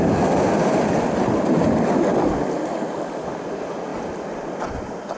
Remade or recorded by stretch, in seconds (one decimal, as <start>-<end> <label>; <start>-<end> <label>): 0.0-3.9 recorded; 3.9-4.6 remade; 4.6-5.2 recorded